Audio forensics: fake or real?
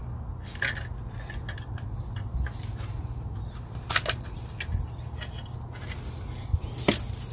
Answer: real